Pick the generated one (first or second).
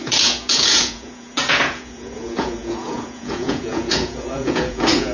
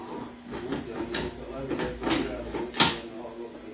first